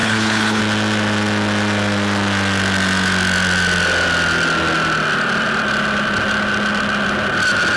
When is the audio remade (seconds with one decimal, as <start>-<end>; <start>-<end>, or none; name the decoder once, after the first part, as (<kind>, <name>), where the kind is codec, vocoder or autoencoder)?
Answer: 0.0-0.6 (codec, HILCodec)